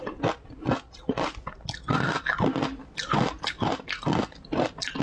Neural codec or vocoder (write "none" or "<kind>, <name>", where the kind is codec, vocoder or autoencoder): none